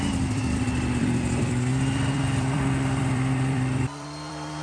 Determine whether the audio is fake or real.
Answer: fake